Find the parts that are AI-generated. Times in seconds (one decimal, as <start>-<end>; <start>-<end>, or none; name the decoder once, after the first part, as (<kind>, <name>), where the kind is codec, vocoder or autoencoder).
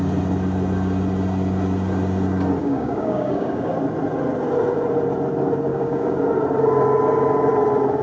2.6-3.7 (codec, DAC); 5.7-6.2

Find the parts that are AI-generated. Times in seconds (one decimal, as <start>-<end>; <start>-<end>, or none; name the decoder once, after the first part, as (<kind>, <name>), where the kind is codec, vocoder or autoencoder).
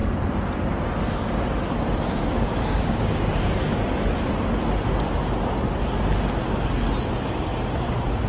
2.2-3.9 (codec, DAC)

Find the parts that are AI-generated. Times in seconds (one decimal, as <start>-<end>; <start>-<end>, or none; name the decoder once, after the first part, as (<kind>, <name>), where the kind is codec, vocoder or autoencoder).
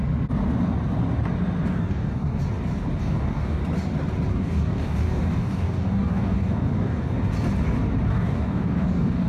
1.6-2.4 (codec, DAC); 3.0-3.6; 4.3-7.2; 8.1-9.3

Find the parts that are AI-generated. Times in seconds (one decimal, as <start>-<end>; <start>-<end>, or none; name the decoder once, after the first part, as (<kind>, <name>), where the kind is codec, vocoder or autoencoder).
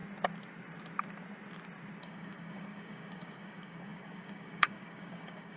2.0-5.6 (codec, DAC)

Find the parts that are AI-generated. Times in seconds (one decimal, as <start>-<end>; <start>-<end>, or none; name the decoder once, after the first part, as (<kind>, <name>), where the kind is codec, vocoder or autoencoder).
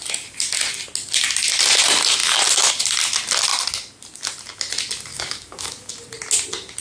5.1-5.9 (codec, DAC)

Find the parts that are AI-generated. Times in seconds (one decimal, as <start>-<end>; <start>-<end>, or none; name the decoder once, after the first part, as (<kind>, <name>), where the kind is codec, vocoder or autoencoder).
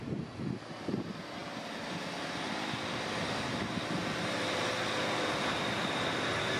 none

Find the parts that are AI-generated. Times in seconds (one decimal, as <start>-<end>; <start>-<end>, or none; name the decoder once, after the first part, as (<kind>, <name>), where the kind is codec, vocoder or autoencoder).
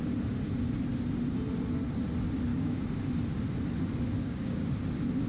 2.5-3.1 (codec, DAC); 4.2-4.8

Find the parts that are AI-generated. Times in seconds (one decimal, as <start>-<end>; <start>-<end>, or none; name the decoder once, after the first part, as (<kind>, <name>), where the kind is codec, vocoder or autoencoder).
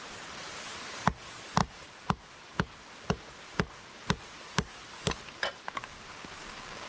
6.1-6.9 (codec, DAC)